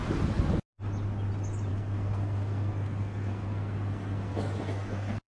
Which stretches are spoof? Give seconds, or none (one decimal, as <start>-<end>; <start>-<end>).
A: 1.7-5.3